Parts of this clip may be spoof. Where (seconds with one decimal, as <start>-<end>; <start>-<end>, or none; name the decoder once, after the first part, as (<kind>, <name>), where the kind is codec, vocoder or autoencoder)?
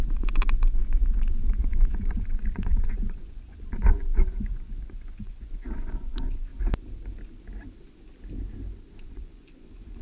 0.0-6.5 (vocoder, Vocos); 9.0-10.0